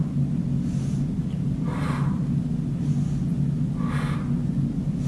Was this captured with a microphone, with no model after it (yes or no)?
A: yes